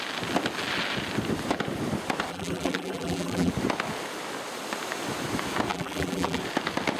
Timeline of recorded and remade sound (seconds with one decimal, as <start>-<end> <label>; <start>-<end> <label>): 0.0-2.3 recorded; 2.3-3.5 remade; 3.5-5.7 recorded; 5.7-6.4 remade; 6.4-7.0 recorded